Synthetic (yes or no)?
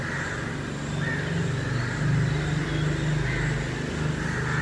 no